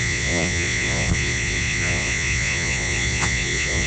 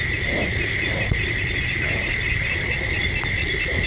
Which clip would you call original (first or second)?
second